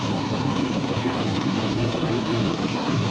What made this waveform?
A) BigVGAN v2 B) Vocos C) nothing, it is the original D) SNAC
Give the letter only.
D